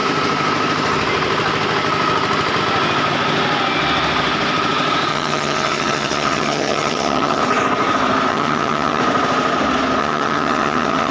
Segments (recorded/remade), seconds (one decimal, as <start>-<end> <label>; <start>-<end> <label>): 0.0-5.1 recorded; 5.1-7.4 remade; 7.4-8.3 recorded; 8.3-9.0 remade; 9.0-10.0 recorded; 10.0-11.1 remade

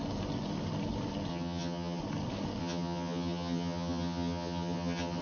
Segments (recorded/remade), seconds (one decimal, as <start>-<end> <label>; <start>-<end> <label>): 0.0-1.3 recorded; 1.3-2.0 remade; 2.0-2.6 recorded; 2.6-5.2 remade

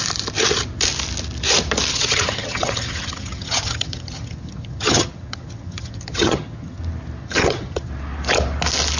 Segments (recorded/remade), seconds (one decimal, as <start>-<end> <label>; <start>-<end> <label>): 0.0-1.9 recorded; 1.9-6.8 remade; 6.8-7.2 recorded; 7.2-7.9 remade; 7.9-9.0 recorded

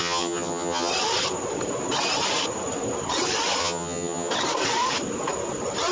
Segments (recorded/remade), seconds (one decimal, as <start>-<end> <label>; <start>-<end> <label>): 0.0-0.9 remade; 0.9-3.6 recorded; 3.6-4.3 remade; 4.3-5.9 recorded